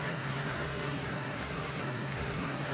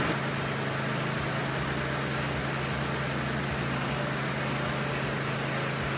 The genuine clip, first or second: second